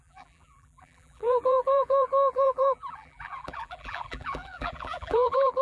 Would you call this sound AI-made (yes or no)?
yes